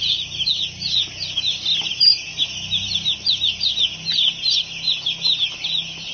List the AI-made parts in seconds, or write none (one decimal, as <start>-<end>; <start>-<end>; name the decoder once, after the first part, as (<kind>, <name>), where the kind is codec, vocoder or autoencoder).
none